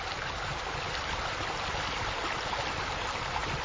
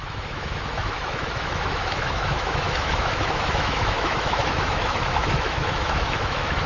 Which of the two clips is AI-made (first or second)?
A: second